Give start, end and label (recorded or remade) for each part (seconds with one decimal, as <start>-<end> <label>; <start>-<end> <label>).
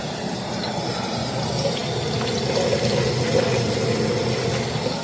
0.0-5.0 recorded